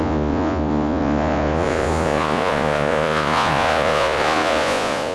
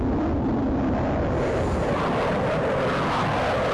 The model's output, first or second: first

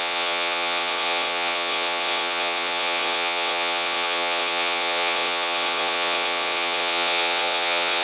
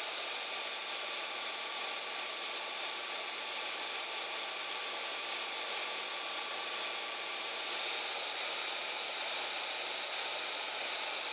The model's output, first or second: first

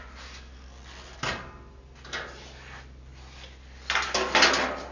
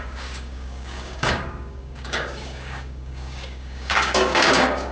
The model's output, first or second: second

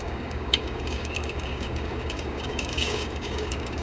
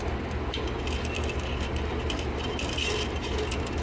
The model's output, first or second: first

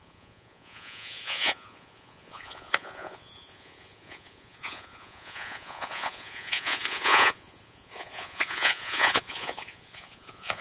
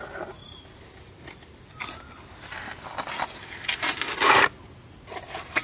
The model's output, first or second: first